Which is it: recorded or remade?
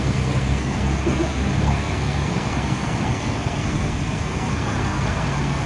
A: remade